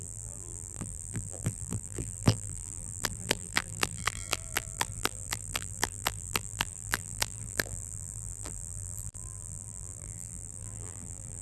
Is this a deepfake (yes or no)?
yes